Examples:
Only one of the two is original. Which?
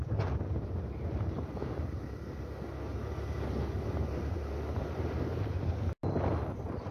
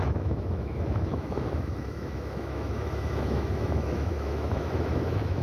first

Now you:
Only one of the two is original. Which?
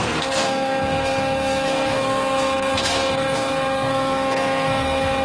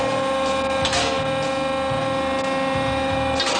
second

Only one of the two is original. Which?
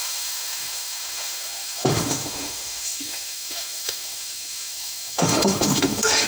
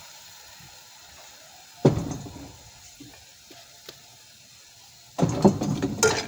second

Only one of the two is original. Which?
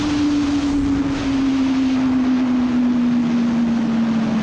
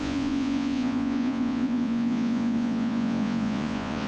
first